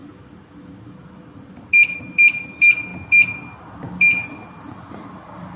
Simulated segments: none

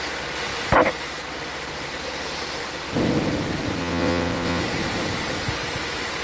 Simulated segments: 3.8-4.6 (vocoder, WaveNeXt)

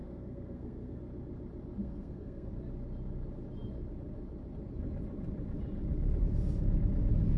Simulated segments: 0.0-1.0 (codec, SNAC); 1.8-2.5

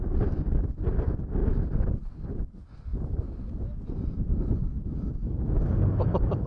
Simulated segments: none

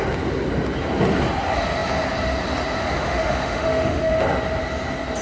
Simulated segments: 2.8-4.1 (autoencoder, DAC-VAE)